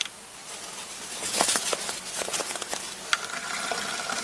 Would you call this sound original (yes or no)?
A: yes